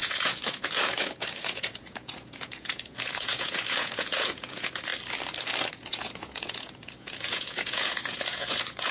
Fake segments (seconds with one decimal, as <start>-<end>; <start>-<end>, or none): 0.0-4.9; 5.7-8.9